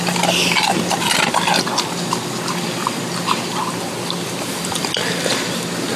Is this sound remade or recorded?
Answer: recorded